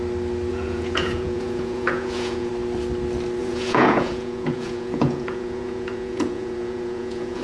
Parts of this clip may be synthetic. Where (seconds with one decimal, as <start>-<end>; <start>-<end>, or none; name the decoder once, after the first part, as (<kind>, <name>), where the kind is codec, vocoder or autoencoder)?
0.5-2.5 (vocoder, Vocos); 3.4-7.4